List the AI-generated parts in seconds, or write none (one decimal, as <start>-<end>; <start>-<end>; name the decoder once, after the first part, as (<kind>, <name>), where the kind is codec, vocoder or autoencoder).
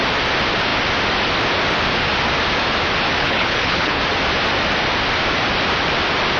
3.2-4.0 (codec, HILCodec)